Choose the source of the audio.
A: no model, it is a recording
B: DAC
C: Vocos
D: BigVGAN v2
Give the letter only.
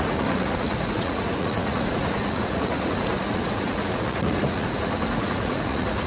C